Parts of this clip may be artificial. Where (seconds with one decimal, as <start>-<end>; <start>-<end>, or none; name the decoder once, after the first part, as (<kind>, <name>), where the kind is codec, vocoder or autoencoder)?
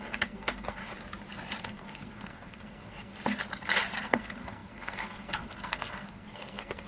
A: 0.0-0.8 (codec, SNAC); 1.6-3.1; 4.0-6.9